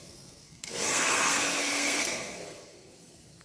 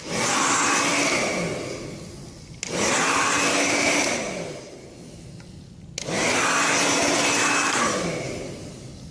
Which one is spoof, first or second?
first